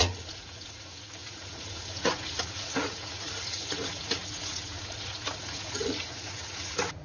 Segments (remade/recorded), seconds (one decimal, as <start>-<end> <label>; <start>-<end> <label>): 0.0-7.0 remade